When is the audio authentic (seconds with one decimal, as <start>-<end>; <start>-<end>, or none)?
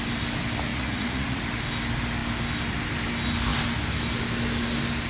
0.0-0.7; 1.4-5.1